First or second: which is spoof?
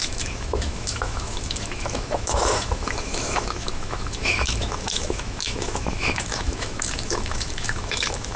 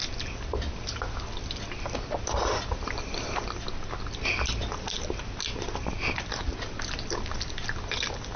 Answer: first